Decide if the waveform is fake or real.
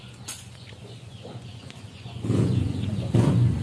fake